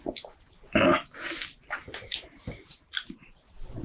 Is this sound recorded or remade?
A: recorded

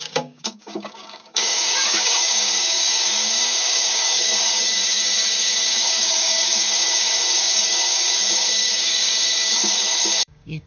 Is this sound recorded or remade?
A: remade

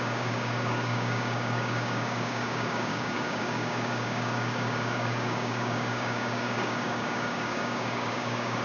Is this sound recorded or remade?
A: remade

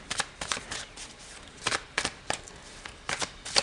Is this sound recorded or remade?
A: remade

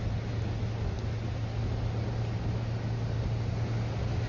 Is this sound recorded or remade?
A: recorded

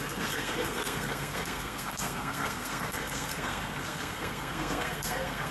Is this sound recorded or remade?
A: remade